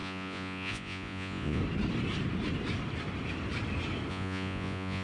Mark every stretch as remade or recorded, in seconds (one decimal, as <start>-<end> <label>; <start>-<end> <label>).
0.0-1.6 remade; 1.6-4.1 recorded; 4.1-5.0 remade